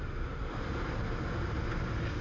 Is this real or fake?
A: real